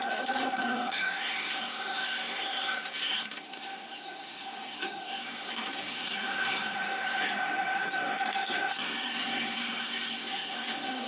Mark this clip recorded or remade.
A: remade